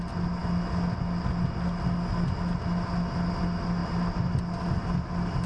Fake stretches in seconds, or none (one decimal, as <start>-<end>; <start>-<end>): none